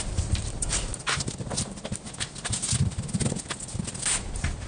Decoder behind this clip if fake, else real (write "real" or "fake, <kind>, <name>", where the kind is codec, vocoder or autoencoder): real